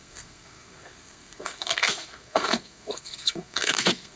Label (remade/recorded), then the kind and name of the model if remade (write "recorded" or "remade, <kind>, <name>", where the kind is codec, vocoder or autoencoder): remade, codec, SNAC